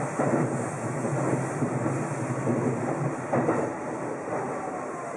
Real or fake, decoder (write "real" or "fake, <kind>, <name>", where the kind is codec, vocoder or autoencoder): real